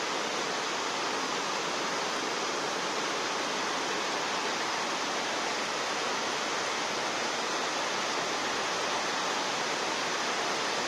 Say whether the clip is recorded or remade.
recorded